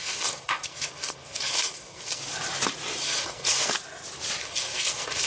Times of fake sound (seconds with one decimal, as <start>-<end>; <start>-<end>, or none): 0.0-2.2; 3.0-3.7; 4.4-5.3